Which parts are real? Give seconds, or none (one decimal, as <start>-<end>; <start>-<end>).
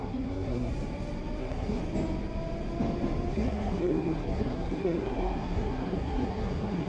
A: 0.7-1.4; 1.8-3.3